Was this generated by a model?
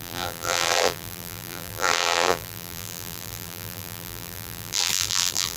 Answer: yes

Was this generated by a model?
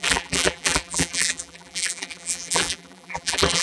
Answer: yes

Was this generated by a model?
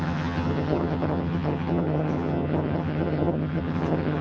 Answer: yes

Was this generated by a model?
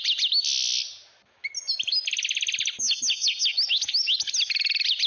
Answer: no